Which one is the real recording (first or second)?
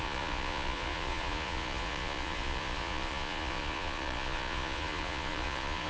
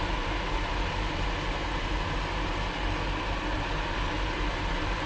second